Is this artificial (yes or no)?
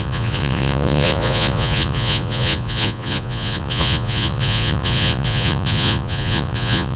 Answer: yes